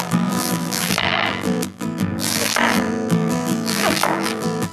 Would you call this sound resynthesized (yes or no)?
yes